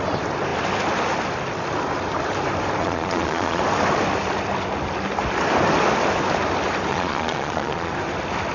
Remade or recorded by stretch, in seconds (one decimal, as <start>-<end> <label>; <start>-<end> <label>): 0.0-2.8 recorded; 2.8-3.6 remade; 3.6-6.9 recorded; 6.9-7.9 remade; 7.9-8.5 recorded